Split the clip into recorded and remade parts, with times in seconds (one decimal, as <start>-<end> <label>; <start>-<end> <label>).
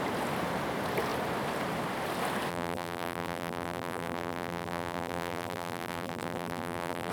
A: 0.0-2.5 recorded; 2.5-7.1 remade